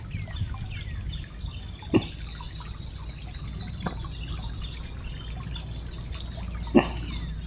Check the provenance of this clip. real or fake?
real